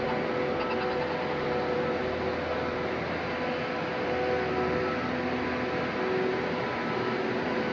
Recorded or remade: recorded